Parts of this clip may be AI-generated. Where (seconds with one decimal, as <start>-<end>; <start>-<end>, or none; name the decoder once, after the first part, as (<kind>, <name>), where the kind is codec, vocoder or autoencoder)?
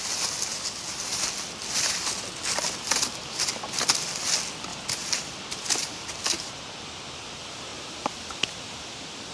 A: 4.7-6.5 (vocoder, BigVGAN v2); 7.7-8.6